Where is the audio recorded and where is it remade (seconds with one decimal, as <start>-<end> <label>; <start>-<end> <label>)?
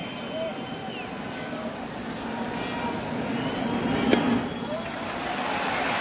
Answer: 0.0-6.0 recorded